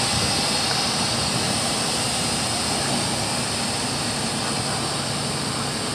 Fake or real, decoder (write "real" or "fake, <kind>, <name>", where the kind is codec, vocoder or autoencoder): real